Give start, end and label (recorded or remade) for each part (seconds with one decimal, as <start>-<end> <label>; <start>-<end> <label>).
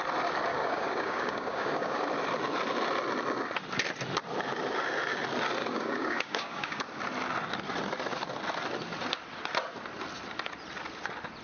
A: 0.0-0.5 recorded; 0.5-2.0 remade; 2.0-5.6 recorded; 5.6-6.8 remade; 6.8-11.4 recorded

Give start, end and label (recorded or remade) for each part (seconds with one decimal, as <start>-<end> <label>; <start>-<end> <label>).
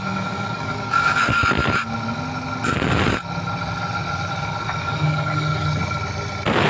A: 0.0-1.4 remade; 1.4-4.6 recorded; 4.6-5.8 remade; 5.8-6.7 recorded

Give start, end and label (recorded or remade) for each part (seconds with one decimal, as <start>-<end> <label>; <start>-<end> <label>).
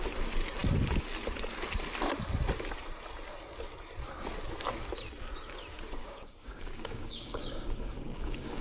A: 0.0-6.0 recorded; 6.0-8.6 remade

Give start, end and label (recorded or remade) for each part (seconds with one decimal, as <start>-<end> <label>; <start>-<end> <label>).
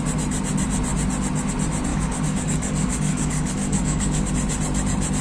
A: 0.0-1.9 recorded; 1.9-4.3 remade; 4.3-5.2 recorded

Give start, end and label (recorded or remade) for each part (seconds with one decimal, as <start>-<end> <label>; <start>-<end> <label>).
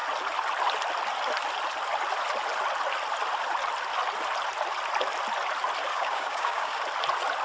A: 0.0-5.9 recorded; 5.9-6.8 remade; 6.8-7.4 recorded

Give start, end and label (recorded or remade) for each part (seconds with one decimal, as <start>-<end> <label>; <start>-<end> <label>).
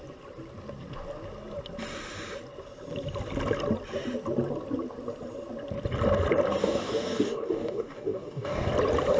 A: 0.0-6.6 recorded; 6.6-8.7 remade; 8.7-9.2 recorded